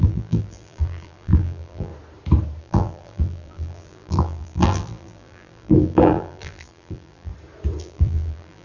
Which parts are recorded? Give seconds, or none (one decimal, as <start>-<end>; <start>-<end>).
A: 1.9-2.6; 7.3-7.8

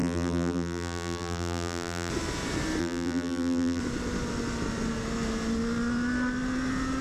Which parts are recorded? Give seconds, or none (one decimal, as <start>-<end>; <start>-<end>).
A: 2.1-2.8; 3.8-7.0

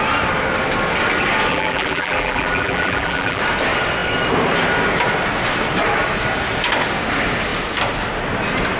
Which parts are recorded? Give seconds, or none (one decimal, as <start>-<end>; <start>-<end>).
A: 0.0-1.5; 3.4-8.8